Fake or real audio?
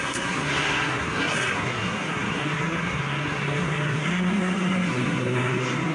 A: fake